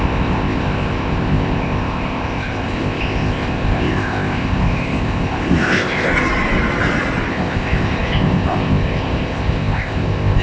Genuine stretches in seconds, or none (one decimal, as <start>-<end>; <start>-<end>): 6.1-7.3